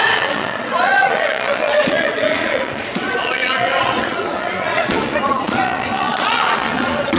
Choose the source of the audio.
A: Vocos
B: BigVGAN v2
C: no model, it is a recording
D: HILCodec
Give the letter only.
A